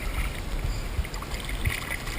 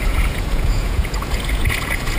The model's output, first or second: second